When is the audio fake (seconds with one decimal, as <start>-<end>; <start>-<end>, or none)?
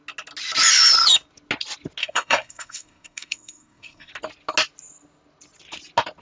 2.0-4.1